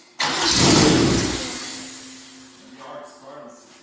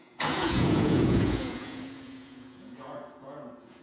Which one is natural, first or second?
first